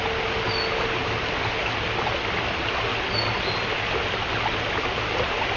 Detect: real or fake real